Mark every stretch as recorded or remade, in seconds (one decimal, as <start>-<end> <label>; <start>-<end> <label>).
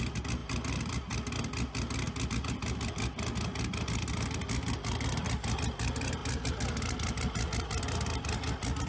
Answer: 0.0-8.9 recorded